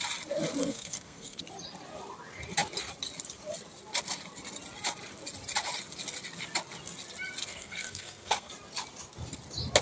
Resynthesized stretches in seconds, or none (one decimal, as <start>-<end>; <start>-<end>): 0.6-1.4; 7.4-8.5

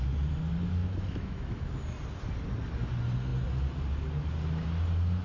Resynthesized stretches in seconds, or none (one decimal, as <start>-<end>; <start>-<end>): 0.8-1.7